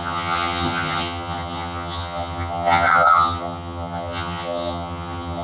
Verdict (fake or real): fake